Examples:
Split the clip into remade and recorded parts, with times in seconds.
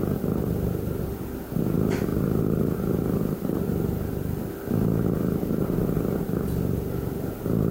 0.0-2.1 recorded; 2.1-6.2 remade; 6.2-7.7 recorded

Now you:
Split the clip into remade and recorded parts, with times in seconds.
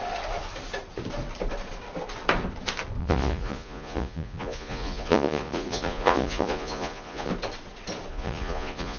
0.0-3.0 recorded; 3.0-7.3 remade; 7.3-8.1 recorded; 8.1-9.0 remade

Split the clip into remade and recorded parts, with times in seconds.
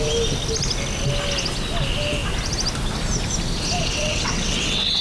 0.0-3.8 recorded; 3.8-5.0 remade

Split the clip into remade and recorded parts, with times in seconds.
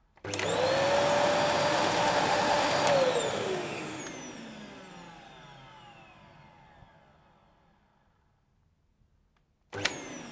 0.0-1.7 recorded; 1.7-2.7 remade; 2.7-3.3 recorded; 3.3-4.0 remade; 4.0-10.3 recorded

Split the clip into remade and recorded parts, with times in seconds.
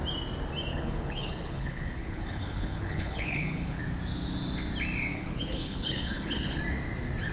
0.0-0.7 recorded; 0.7-3.8 remade; 3.8-5.1 recorded; 5.1-6.6 remade; 6.6-7.3 recorded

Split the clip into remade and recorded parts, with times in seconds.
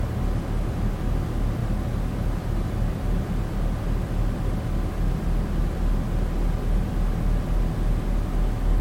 0.0-8.8 recorded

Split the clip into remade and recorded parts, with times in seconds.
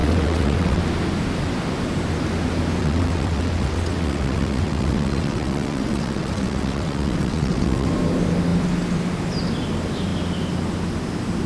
0.0-0.8 remade; 0.8-2.8 recorded; 2.8-7.9 remade; 7.9-11.5 recorded